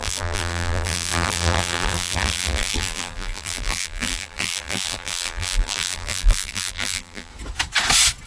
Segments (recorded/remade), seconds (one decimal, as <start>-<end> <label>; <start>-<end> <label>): 0.0-7.3 remade; 7.3-8.3 recorded